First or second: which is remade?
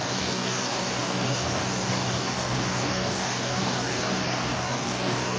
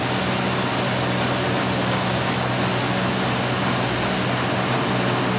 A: first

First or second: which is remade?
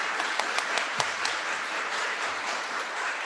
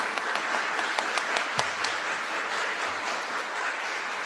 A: first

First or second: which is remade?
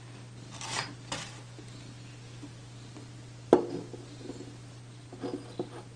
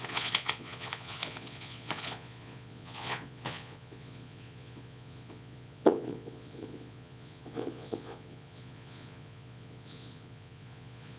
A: second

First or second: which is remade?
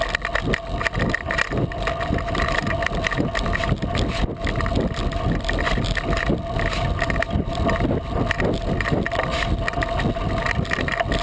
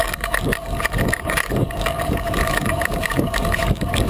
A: second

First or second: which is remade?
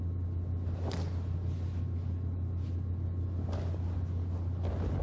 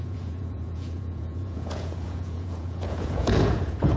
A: second